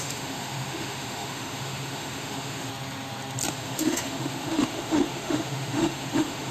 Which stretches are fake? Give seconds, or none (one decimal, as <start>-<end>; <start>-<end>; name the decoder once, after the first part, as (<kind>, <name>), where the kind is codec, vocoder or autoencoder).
0.0-2.7 (autoencoder, DAC-VAE); 3.5-6.5